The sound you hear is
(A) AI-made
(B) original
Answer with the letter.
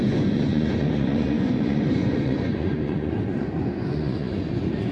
A